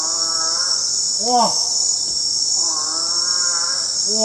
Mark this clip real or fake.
real